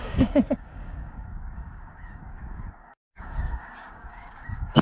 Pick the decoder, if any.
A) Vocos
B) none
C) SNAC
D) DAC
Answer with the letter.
D